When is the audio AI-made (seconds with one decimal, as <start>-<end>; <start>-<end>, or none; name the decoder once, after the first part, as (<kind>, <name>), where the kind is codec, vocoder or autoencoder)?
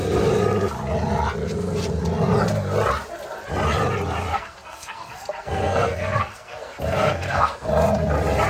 4.3-7.7 (codec, SNAC)